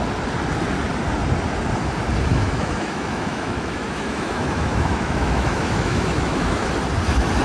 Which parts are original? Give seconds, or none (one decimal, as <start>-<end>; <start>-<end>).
0.0-2.3; 6.7-7.4